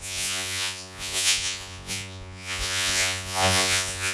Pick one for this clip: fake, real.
fake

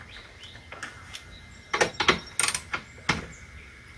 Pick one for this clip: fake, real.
real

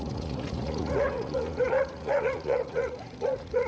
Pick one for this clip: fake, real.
fake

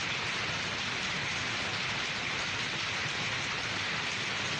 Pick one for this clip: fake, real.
real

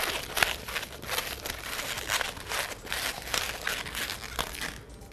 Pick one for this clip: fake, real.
real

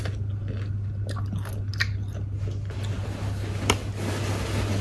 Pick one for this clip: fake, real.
real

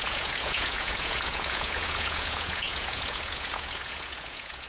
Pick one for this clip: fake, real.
fake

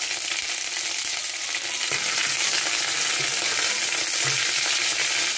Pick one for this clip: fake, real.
real